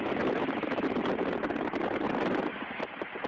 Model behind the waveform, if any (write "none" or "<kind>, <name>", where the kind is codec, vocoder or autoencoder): none